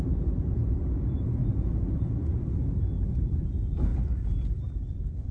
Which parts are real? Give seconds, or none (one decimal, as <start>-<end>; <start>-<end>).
1.4-1.9; 2.3-3.1; 3.9-4.7